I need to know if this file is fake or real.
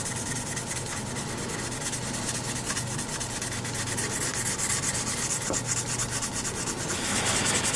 real